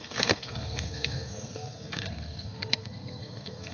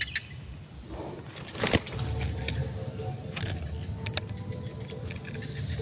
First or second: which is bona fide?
second